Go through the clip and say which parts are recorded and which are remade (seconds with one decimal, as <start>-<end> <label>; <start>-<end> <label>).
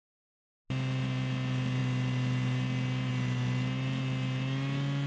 0.0-5.1 recorded